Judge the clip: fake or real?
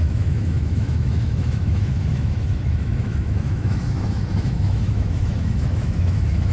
fake